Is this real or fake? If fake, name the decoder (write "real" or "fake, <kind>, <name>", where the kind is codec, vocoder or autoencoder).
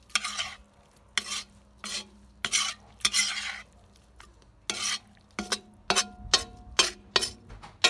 real